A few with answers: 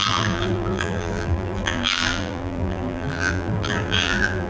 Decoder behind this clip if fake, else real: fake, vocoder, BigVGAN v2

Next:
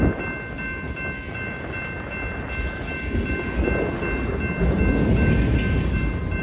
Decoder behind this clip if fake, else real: real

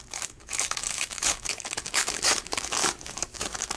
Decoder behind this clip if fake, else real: fake, codec, DAC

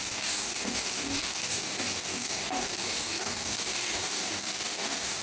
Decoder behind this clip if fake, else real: fake, codec, DAC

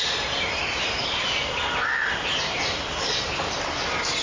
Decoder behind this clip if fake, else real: real